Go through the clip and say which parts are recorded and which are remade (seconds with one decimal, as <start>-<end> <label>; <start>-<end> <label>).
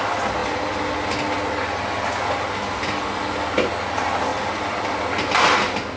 0.0-4.3 recorded; 4.3-5.0 remade; 5.0-6.0 recorded